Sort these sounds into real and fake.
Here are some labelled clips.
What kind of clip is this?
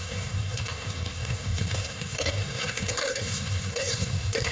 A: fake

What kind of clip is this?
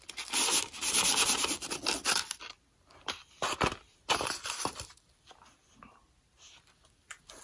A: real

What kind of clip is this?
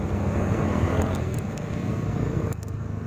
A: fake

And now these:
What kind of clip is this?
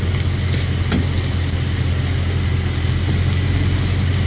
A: real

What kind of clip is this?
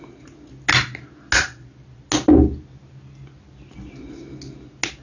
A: real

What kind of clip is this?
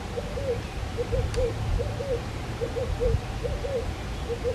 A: real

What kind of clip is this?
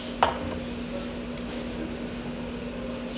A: real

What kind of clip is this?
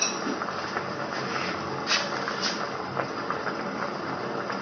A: real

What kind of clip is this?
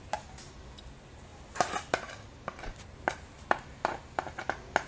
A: real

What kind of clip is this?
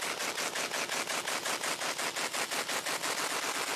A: real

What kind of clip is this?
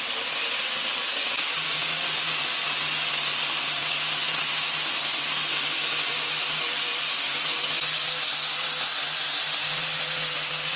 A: real